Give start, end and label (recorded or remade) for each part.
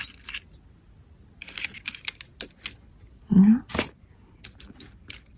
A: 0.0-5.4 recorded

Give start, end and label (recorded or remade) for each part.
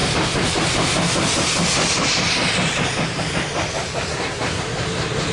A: 0.0-4.1 recorded; 4.1-4.6 remade; 4.6-5.3 recorded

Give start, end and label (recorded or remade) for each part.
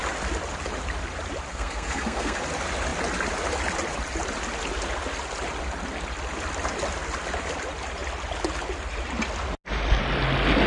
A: 0.0-1.5 recorded; 1.5-2.4 remade; 2.4-10.7 recorded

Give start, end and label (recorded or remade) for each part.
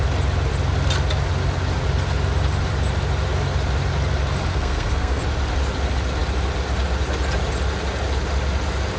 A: 0.0-4.5 recorded; 4.5-5.2 remade; 5.2-9.0 recorded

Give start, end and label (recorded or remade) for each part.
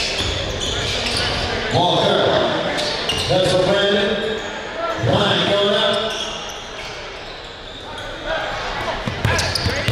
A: 0.0-2.3 recorded; 2.3-2.9 remade; 2.9-4.9 recorded; 4.9-5.5 remade; 5.5-9.9 recorded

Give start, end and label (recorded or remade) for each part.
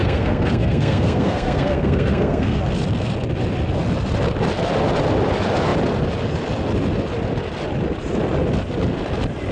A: 0.0-2.6 remade; 2.6-9.5 recorded